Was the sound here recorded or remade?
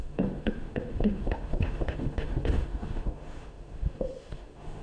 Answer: remade